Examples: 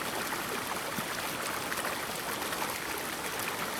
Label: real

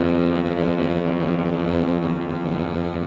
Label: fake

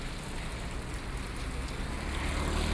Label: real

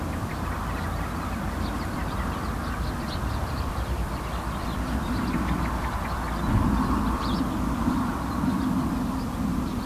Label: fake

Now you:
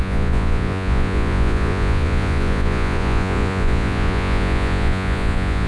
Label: fake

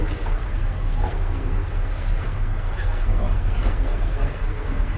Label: fake